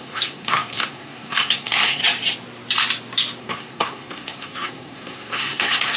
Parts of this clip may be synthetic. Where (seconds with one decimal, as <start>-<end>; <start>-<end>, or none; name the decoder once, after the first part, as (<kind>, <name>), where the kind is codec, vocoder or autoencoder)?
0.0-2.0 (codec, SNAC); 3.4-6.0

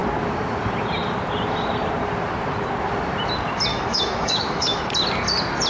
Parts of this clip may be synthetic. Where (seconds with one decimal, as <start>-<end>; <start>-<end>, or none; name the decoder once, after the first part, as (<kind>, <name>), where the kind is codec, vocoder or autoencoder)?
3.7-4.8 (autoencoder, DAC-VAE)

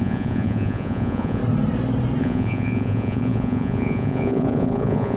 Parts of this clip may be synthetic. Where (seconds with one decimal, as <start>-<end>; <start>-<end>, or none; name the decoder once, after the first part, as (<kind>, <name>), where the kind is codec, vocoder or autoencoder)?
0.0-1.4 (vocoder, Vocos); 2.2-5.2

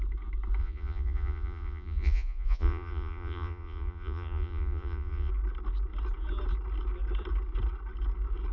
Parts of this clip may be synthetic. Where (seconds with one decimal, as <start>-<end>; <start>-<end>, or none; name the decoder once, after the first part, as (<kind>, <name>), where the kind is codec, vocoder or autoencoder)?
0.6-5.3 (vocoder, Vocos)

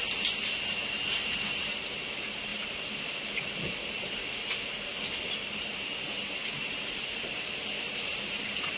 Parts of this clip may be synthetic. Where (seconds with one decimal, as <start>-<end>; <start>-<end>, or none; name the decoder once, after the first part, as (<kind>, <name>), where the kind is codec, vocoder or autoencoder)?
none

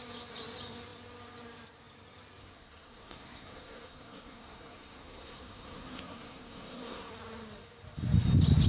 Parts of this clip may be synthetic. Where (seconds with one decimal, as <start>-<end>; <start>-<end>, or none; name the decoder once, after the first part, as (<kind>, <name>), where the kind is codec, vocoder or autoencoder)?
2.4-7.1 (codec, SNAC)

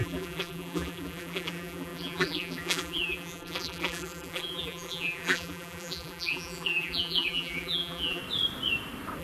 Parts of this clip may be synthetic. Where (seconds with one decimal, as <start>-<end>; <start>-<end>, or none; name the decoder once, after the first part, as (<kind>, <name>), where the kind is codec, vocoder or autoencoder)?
0.0-8.2 (vocoder, BigVGAN v2)